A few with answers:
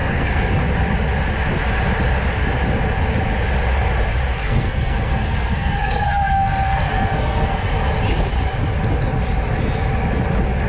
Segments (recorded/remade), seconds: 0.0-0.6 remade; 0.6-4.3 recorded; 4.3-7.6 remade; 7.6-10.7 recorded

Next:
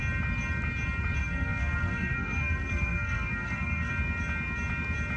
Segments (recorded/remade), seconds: 0.0-1.2 recorded; 1.2-3.9 remade; 3.9-5.2 recorded

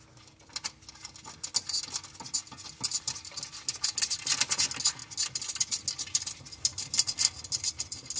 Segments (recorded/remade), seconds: 0.0-8.2 recorded

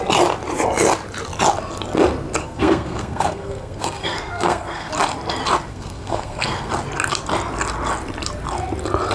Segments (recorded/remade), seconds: 0.0-2.4 recorded; 2.4-4.9 remade; 4.9-5.7 recorded; 5.7-6.7 remade; 6.7-9.1 recorded

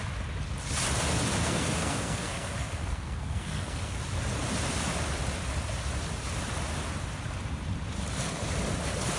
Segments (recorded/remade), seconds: 0.0-1.4 recorded; 1.4-4.0 remade; 4.0-9.2 recorded